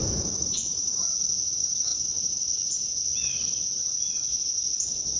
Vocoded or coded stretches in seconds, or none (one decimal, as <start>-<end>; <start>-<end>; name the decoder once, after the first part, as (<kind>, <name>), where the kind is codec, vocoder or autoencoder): 0.0-1.0 (autoencoder, DAC-VAE)